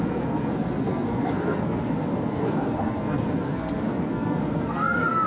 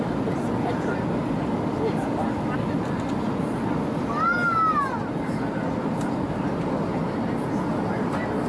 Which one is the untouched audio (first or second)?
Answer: second